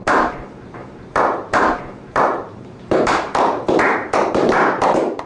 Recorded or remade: remade